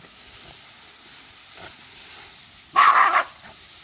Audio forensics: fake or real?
real